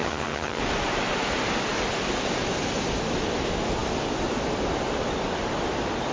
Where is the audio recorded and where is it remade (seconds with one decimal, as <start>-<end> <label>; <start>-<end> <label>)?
0.0-0.6 remade; 0.6-6.1 recorded